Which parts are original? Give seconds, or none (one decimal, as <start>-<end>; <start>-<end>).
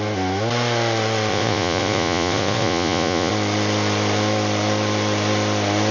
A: 0.0-1.3; 3.3-5.9